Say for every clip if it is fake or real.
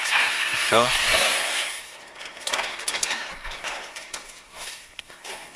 fake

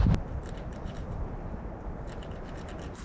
real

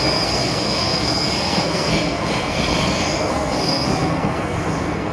fake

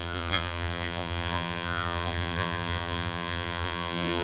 fake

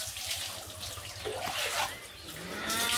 real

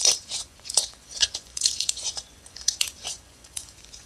fake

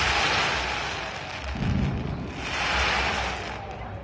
real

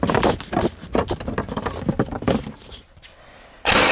real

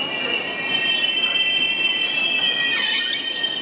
real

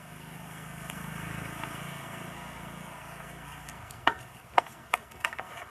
fake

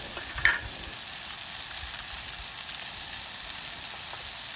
fake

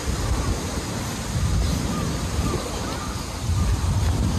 real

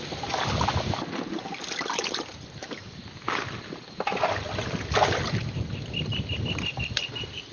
real